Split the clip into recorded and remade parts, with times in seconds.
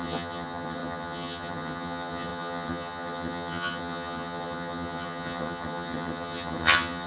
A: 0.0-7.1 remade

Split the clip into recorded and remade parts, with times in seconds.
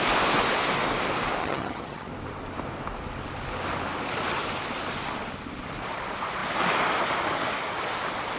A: 0.0-1.4 recorded; 1.4-2.1 remade; 2.1-8.4 recorded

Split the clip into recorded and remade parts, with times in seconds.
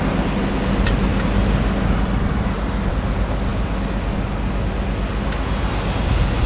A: 0.0-6.5 recorded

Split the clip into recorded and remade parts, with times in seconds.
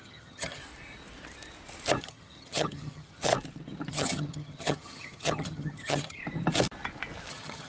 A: 0.0-0.6 remade; 0.6-2.0 recorded; 2.0-3.3 remade; 3.3-3.9 recorded; 3.9-6.2 remade; 6.2-7.3 recorded; 7.3-7.7 remade